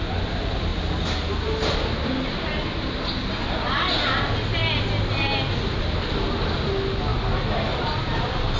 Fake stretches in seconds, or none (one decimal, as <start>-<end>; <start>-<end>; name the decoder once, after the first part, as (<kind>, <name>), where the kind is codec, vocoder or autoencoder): none